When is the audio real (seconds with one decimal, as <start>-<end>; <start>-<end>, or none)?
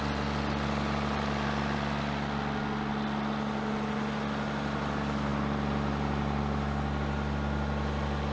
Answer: 0.0-8.3